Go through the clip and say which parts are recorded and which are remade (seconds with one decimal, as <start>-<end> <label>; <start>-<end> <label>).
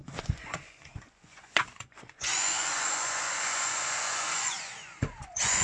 0.0-5.6 remade